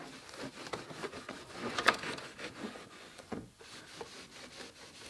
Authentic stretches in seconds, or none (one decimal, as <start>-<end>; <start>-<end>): 0.0-1.0; 3.8-5.1